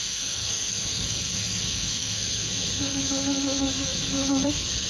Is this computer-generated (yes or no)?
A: yes